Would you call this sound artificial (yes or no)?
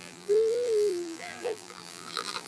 yes